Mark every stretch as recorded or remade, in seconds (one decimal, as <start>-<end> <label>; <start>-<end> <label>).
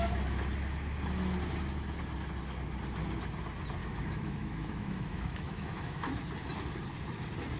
0.0-3.8 recorded; 3.8-6.1 remade; 6.1-7.6 recorded